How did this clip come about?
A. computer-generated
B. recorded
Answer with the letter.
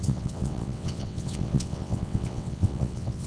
A